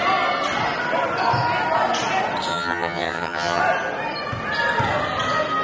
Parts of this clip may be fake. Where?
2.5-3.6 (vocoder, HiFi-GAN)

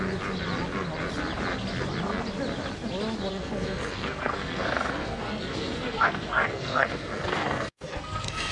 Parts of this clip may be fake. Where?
3.3-8.5 (codec, SNAC)

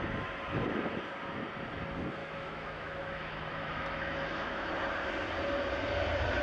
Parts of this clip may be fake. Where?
2.2-4.7 (autoencoder, DAC-VAE)

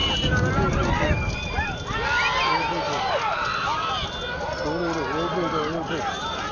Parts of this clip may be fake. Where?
none

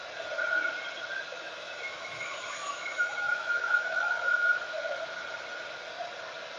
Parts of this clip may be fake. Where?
1.3-5.0 (autoencoder, DAC-VAE)

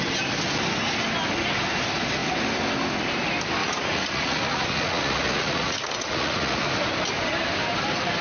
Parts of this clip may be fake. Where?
3.6-6.7 (vocoder, Vocos)

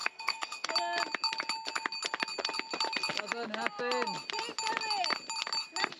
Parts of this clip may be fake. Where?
0.0-0.7 (codec, SNAC)